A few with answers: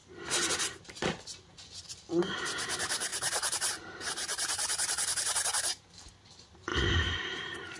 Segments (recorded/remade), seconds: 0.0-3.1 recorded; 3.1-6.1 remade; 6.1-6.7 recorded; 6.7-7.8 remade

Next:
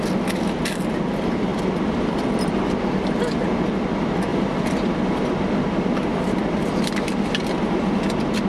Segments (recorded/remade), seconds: 0.0-1.5 recorded; 1.5-2.7 remade; 2.7-4.3 recorded; 4.3-5.3 remade; 5.3-6.1 recorded; 6.1-7.7 remade; 7.7-8.5 recorded

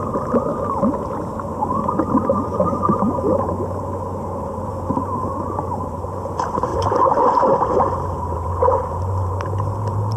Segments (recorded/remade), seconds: 0.0-0.5 remade; 0.5-2.8 recorded; 2.8-10.2 remade

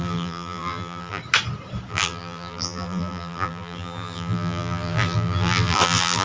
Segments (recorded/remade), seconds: 0.0-1.2 remade; 1.2-1.9 recorded; 1.9-6.2 remade

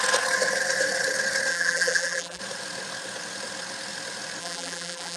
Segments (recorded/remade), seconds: 0.0-1.5 recorded; 1.5-2.4 remade; 2.4-4.4 recorded; 4.4-5.2 remade

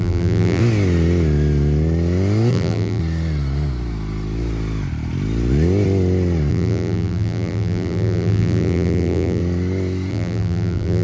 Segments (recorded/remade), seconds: 0.0-0.6 remade; 0.6-2.5 recorded; 2.5-3.0 remade; 3.0-6.5 recorded; 6.5-9.4 remade; 9.4-10.1 recorded; 10.1-11.0 remade

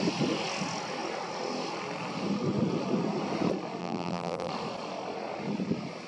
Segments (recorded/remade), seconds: 0.0-3.8 recorded; 3.8-4.5 remade; 4.5-6.1 recorded